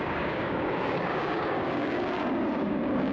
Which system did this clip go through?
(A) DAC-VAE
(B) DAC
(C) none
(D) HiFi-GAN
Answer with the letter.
B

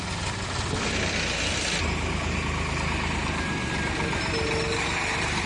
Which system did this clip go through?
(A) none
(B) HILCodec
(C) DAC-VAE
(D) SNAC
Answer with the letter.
A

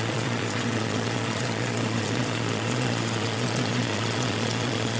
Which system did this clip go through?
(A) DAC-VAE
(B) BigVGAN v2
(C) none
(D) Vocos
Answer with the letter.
D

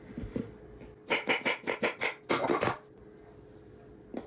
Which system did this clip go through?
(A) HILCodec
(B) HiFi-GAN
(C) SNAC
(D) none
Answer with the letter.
D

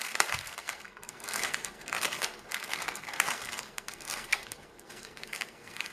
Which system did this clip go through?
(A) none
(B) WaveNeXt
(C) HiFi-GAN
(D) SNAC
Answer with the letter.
D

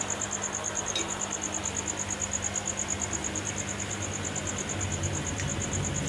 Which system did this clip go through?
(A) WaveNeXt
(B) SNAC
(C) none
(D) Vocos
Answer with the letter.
C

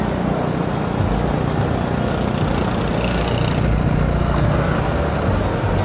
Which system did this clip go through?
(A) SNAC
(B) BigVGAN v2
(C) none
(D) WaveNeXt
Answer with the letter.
C